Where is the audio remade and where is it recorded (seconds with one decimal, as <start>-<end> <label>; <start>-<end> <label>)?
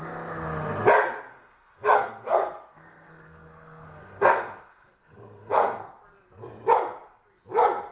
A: 0.0-1.3 recorded; 1.3-6.0 remade; 6.0-7.9 recorded